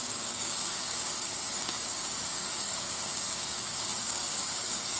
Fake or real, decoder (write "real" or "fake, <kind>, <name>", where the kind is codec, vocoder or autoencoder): fake, codec, DAC